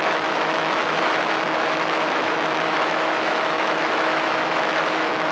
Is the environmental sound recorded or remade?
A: remade